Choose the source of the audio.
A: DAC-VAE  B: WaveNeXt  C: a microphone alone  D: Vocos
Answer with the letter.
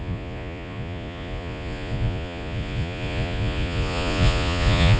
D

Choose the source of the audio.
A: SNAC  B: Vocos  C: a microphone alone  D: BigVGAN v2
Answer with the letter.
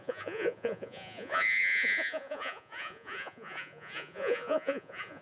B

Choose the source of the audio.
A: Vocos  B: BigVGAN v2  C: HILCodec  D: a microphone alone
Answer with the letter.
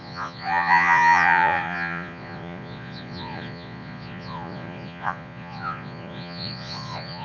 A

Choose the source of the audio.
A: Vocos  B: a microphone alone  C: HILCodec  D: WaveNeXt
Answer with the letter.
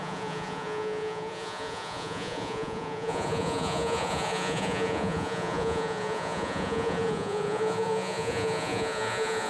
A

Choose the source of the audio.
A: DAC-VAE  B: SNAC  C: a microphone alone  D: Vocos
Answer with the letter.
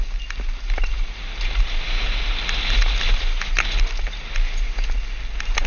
C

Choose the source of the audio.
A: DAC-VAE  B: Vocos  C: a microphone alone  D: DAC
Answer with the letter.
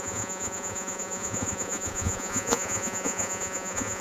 B